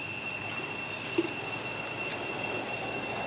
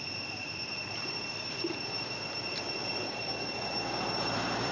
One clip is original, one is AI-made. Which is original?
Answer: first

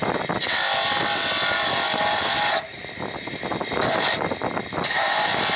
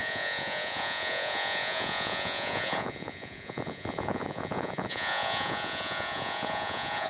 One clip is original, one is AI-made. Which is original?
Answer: first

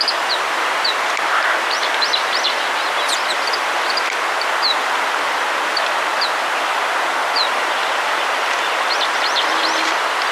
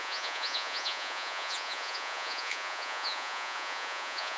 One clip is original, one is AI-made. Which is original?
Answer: first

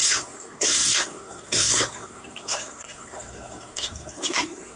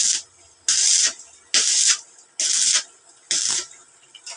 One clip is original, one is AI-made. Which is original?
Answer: second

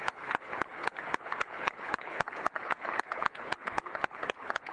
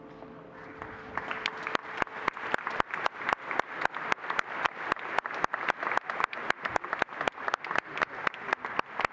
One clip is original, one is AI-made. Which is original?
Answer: second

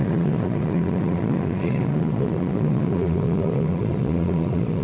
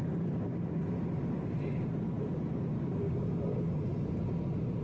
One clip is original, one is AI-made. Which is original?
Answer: second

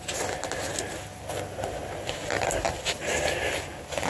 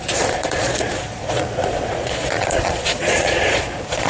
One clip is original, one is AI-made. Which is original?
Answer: first